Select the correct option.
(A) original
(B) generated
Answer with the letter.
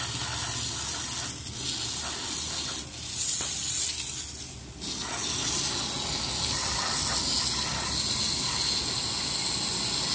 A